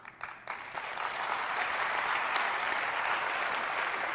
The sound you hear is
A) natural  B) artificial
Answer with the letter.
A